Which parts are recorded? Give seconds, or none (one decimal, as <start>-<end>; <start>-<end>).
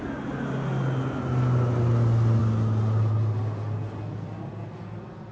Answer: 0.0-5.3